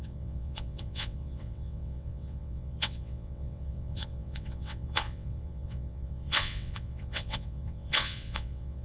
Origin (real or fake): fake